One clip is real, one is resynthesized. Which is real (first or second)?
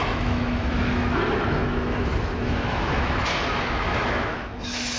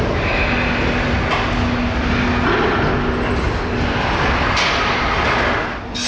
second